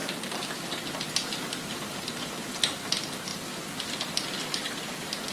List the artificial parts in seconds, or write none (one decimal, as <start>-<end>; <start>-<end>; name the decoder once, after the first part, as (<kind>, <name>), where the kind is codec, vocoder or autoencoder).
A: none